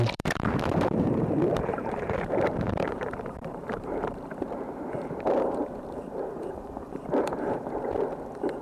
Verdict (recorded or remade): remade